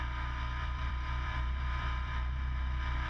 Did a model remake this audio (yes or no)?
yes